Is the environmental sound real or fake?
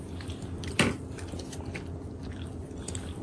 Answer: real